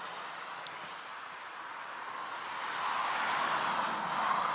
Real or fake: real